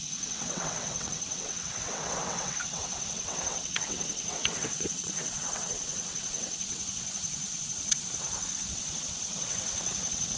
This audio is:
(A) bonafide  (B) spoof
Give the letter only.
B